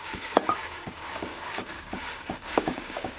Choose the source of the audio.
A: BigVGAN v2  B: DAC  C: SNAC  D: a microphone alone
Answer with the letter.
B